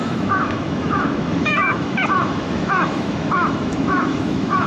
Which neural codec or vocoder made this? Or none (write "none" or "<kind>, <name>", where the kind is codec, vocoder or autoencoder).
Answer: autoencoder, DAC-VAE